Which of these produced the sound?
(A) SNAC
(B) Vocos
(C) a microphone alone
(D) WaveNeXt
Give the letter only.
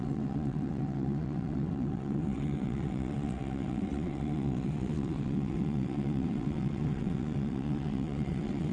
D